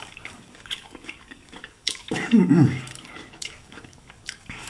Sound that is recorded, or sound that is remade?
remade